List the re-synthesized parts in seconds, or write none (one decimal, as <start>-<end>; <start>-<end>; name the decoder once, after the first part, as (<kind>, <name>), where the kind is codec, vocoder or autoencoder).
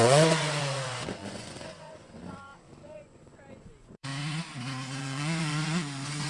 0.0-4.1 (vocoder, Vocos); 5.0-6.3